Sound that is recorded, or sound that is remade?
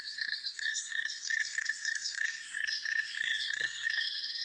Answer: remade